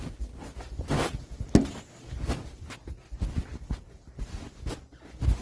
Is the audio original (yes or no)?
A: yes